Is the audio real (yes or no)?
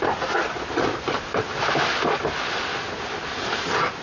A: yes